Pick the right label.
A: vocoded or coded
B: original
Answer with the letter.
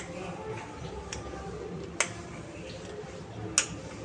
B